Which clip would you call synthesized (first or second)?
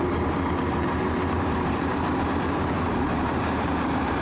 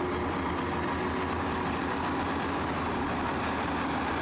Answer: first